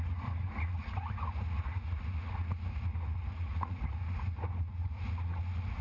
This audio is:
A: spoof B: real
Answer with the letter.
A